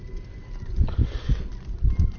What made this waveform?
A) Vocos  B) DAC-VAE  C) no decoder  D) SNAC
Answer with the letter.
C